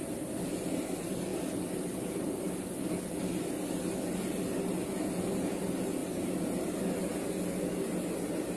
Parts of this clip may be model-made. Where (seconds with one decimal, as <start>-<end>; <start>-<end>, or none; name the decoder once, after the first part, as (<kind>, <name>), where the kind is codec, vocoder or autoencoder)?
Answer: none